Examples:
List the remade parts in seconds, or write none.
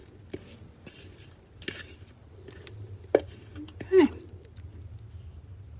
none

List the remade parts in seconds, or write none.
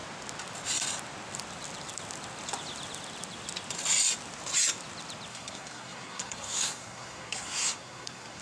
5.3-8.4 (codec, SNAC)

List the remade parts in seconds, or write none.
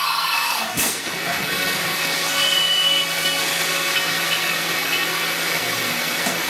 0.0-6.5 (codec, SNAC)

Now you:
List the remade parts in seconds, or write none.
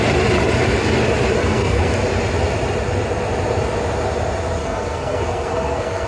1.4-1.9 (codec, SNAC); 4.6-6.1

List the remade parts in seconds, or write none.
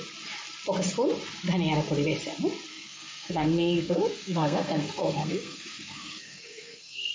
2.7-7.1 (codec, SNAC)